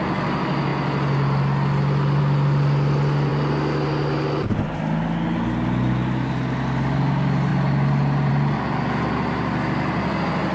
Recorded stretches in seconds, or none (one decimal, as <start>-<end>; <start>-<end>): 0.0-10.5